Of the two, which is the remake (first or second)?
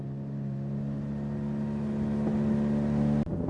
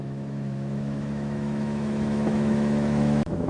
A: second